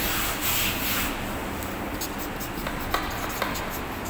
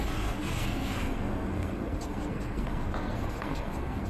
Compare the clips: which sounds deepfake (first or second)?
second